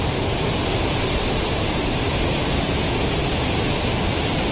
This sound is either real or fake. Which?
real